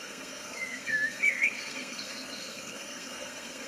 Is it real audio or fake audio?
fake